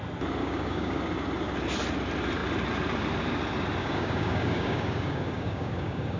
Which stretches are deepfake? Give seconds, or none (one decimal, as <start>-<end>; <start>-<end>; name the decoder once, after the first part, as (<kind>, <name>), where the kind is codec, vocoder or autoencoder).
0.4-1.0 (codec, DAC); 3.8-6.2